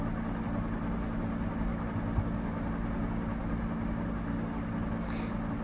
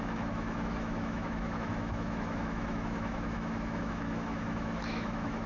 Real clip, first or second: first